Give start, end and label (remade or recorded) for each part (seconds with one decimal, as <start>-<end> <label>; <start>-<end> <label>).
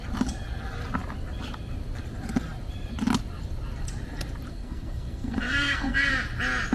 0.0-4.5 recorded; 4.5-6.1 remade; 6.1-6.7 recorded